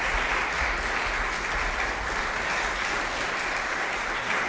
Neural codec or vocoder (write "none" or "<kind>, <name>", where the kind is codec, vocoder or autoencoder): none